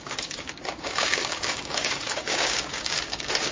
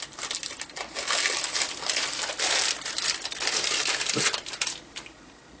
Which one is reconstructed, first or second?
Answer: first